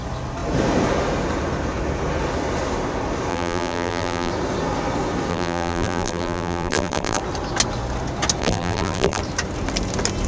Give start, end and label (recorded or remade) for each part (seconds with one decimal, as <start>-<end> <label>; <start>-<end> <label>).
0.0-3.3 recorded; 3.3-4.3 remade; 4.3-5.3 recorded; 5.3-7.2 remade; 7.2-8.4 recorded; 8.4-9.2 remade; 9.2-10.3 recorded